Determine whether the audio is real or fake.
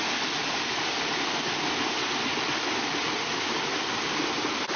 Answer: real